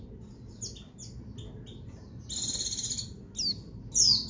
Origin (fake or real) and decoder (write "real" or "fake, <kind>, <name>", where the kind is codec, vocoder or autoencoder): real